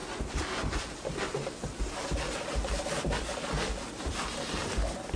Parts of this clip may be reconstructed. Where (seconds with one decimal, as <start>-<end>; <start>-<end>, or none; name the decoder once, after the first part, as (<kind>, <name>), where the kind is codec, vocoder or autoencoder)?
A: none